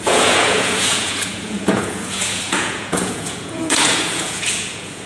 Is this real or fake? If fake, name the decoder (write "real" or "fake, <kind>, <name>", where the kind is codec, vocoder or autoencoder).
fake, vocoder, Vocos